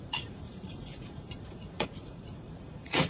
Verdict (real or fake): fake